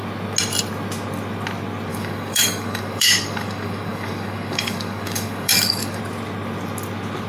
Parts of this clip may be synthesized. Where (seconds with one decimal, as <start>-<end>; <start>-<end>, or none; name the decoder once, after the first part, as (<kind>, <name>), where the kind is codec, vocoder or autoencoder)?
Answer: 1.9-6.0 (codec, DAC)